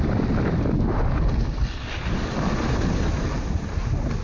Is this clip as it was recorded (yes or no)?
yes